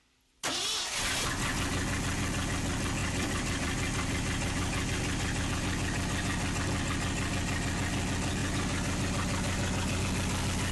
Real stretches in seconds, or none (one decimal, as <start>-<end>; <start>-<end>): 0.0-3.0; 5.5-8.4; 10.0-10.7